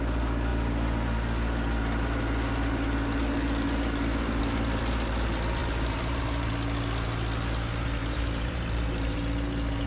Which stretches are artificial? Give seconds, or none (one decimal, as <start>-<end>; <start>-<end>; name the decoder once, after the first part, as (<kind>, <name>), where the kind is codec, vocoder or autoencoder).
5.6-6.5 (vocoder, BigVGAN v2); 8.0-9.2